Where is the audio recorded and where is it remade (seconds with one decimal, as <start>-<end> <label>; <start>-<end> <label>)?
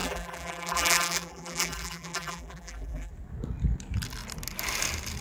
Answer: 0.0-3.1 remade; 3.1-5.2 recorded